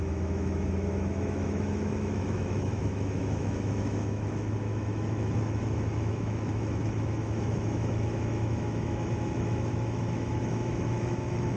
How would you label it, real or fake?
fake